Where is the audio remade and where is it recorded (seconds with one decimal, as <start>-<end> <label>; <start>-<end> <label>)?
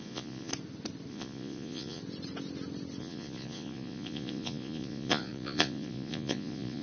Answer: 0.0-0.5 remade; 0.5-1.1 recorded; 1.1-2.0 remade; 2.0-3.0 recorded; 3.0-6.8 remade